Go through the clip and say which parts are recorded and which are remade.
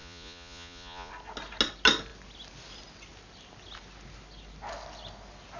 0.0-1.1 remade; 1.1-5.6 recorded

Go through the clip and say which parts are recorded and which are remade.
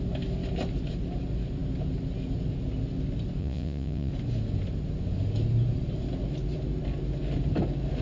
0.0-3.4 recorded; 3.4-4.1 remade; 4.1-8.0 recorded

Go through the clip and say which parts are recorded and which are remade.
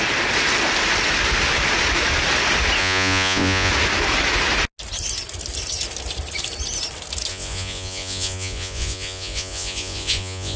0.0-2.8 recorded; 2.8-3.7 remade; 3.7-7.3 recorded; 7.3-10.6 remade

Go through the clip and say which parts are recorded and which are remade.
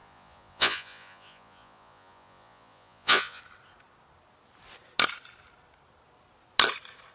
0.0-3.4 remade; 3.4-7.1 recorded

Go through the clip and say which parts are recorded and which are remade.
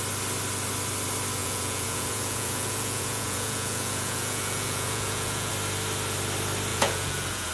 0.0-1.4 recorded; 1.4-5.5 remade; 5.5-6.7 recorded; 6.7-7.5 remade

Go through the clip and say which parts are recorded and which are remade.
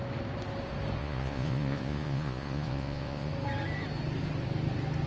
0.0-1.0 recorded; 1.0-3.3 remade; 3.3-5.1 recorded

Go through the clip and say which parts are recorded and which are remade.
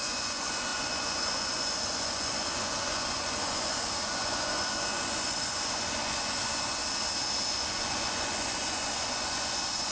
0.0-6.8 remade; 6.8-7.5 recorded; 7.5-9.9 remade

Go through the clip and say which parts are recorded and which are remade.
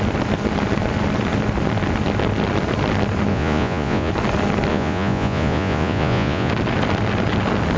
0.0-3.3 recorded; 3.3-4.1 remade; 4.1-4.7 recorded; 4.7-6.5 remade; 6.5-7.8 recorded